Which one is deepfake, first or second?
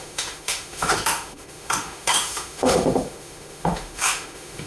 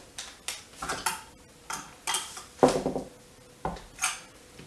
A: first